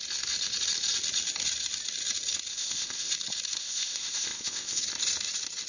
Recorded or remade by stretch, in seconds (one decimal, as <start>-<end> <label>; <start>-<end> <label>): 0.0-2.5 recorded; 2.5-3.1 remade; 3.1-3.6 recorded; 3.6-4.8 remade; 4.8-5.7 recorded